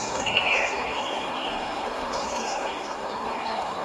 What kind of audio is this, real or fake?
fake